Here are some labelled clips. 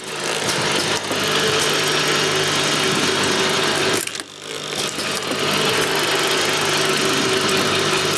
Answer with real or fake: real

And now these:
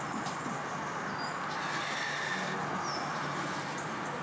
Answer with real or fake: real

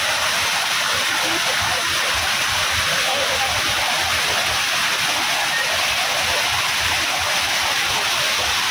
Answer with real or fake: real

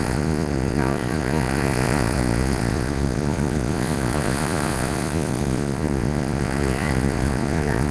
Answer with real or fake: fake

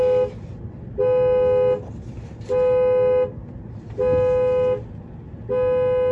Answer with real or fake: real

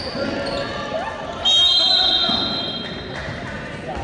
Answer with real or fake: real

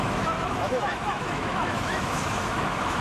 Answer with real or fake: fake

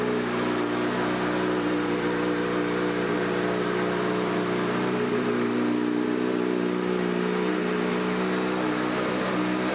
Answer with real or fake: real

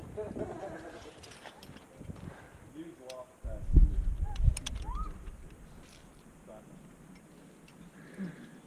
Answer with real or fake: real